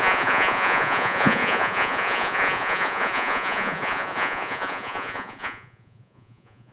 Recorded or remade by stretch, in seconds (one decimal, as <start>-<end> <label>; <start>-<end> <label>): 0.0-6.7 remade